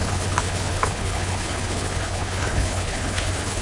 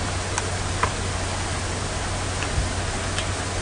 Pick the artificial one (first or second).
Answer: first